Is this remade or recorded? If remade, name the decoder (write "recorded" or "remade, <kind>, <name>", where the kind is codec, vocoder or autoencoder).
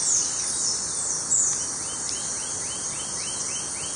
recorded